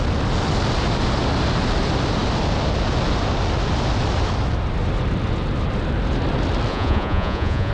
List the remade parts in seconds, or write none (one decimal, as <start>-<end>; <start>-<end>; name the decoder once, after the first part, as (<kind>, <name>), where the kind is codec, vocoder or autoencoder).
6.7-7.7 (vocoder, Vocos)